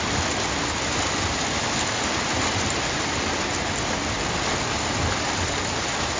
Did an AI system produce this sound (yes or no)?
no